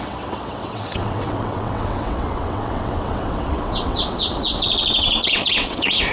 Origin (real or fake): fake